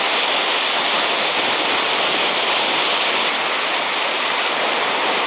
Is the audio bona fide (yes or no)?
yes